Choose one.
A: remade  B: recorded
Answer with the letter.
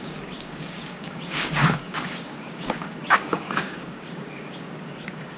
A